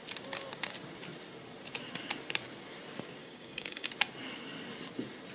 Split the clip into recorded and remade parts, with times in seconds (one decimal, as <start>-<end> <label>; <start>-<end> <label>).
0.0-3.2 recorded; 3.2-3.9 remade; 3.9-5.3 recorded